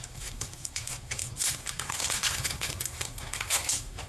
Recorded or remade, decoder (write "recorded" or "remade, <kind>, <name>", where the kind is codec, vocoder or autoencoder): remade, codec, SNAC